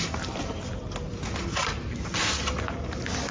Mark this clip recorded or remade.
recorded